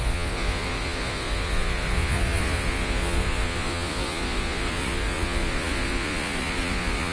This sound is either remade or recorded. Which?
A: remade